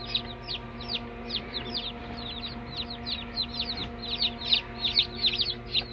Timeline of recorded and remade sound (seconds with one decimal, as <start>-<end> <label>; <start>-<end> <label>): 0.0-5.9 recorded

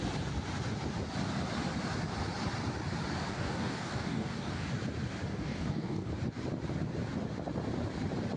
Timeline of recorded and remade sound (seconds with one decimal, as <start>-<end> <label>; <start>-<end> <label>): 0.0-3.3 recorded; 3.3-4.7 remade; 4.7-5.3 recorded; 5.3-6.1 remade; 6.1-8.4 recorded

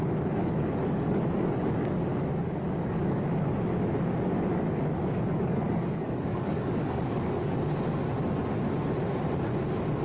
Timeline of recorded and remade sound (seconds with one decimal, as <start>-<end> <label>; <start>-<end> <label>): 0.0-0.4 recorded; 0.4-3.5 remade; 3.5-4.5 recorded; 4.5-7.4 remade; 7.4-10.0 recorded

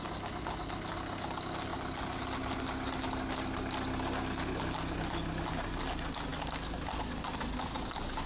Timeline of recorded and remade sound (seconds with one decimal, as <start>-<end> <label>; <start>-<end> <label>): 0.0-8.3 recorded

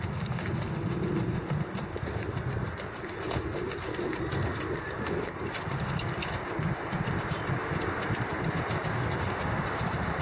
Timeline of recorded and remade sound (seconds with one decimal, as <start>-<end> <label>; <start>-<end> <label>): 0.0-10.2 recorded